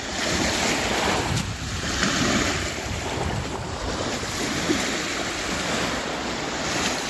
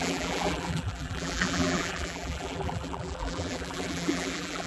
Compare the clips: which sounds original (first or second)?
first